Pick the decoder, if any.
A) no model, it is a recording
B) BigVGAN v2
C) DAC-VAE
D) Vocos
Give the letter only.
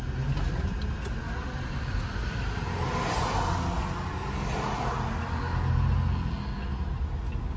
A